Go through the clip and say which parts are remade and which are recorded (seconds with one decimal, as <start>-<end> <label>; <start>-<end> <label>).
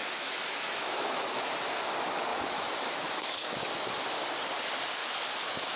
0.0-1.5 remade; 1.5-2.3 recorded; 2.3-3.9 remade; 3.9-5.0 recorded; 5.0-5.8 remade